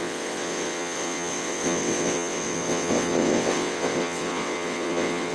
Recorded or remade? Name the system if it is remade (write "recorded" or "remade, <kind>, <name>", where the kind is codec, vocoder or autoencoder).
remade, vocoder, WaveNeXt